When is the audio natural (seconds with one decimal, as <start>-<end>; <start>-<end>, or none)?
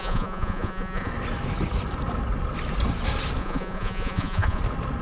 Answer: 1.1-3.4; 4.6-5.0